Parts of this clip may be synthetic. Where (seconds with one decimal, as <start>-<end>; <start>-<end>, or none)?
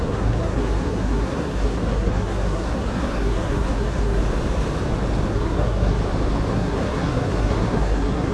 0.0-4.2; 5.3-6.0; 6.5-8.3